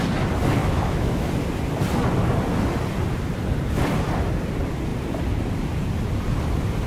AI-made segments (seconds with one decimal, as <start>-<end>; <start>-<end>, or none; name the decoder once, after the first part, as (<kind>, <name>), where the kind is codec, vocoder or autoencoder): 0.6-1.3 (autoencoder, DAC-VAE)